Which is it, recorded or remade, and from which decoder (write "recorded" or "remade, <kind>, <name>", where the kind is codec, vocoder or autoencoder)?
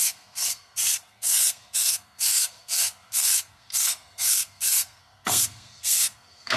remade, codec, SNAC